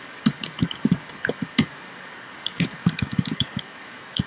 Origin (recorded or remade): remade